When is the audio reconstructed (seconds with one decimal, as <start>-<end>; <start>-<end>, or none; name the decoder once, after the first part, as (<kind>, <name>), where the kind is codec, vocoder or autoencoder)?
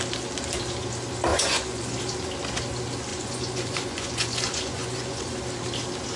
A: 1.3-2.0 (vocoder, Vocos); 3.1-5.4